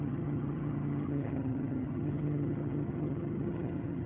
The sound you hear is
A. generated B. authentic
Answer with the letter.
A